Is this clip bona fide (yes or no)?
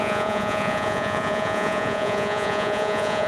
no